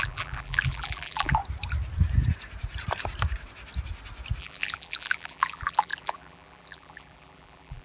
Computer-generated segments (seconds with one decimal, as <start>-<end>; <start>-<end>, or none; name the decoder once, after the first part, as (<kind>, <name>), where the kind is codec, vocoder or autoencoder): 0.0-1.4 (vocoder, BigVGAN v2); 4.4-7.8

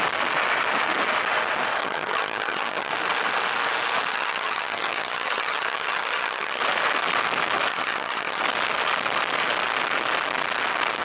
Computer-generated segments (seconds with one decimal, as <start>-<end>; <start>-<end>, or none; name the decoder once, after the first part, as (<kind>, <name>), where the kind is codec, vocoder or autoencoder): 1.8-2.9 (vocoder, HiFi-GAN); 4.1-6.6; 7.7-8.4

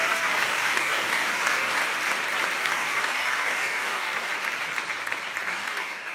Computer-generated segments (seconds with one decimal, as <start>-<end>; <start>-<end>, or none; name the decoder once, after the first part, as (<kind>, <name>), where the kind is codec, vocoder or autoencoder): 0.0-1.8 (codec, DAC); 2.6-4.3; 5.5-6.1

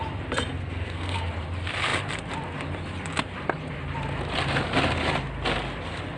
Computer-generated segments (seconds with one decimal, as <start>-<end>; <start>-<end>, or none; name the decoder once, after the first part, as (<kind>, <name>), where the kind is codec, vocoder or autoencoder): 0.6-1.2 (codec, SNAC)

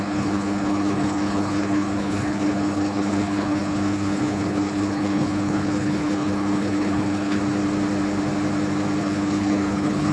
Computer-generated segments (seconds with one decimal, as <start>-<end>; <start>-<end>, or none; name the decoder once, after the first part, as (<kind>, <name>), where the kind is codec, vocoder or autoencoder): 0.0-7.4 (codec, HILCodec); 9.0-10.1

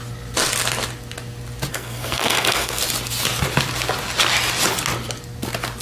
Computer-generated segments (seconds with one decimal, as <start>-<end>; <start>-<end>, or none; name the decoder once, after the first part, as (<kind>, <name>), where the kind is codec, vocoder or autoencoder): 1.7-2.8 (codec, SNAC)